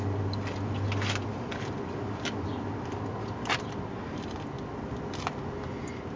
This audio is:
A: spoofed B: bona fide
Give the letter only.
B